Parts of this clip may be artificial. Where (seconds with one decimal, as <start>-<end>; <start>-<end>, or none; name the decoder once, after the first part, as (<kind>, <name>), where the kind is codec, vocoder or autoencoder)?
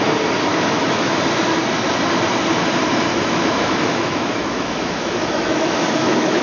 0.5-1.2 (autoencoder, DAC-VAE); 3.1-6.4